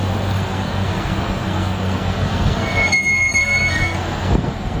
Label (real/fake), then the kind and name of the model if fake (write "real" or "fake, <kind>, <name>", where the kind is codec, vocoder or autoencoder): fake, codec, SNAC